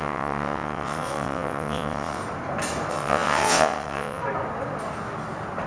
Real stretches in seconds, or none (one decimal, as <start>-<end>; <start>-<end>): 2.2-2.9; 4.2-5.7